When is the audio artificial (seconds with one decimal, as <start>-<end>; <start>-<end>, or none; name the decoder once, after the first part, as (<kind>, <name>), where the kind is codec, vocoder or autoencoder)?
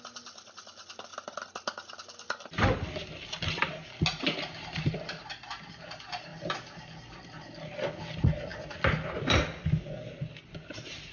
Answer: 1.1-3.6 (vocoder, BigVGAN v2); 6.3-7.6; 8.5-10.2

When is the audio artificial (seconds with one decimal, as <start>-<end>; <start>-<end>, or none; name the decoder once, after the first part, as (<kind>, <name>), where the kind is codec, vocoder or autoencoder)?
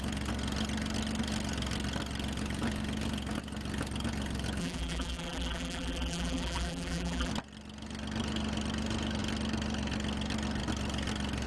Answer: 4.6-7.3 (vocoder, BigVGAN v2)